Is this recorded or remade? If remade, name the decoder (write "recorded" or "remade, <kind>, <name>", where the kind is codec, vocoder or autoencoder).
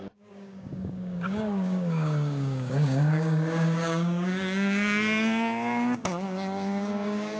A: remade, codec, DAC